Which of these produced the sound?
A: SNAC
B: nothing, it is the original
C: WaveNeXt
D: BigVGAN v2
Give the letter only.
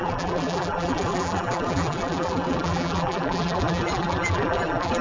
D